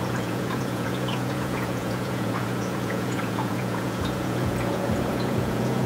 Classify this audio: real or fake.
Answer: fake